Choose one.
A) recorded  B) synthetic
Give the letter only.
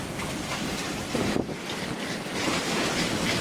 B